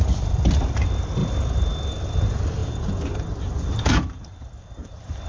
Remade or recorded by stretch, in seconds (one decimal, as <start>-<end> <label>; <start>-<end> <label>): 0.0-1.2 remade; 1.2-1.9 recorded; 1.9-2.6 remade; 2.6-3.4 recorded; 3.4-5.3 remade